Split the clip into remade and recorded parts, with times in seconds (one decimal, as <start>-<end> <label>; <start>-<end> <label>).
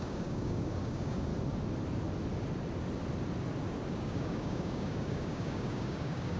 0.0-1.3 remade; 1.3-3.9 recorded; 3.9-6.4 remade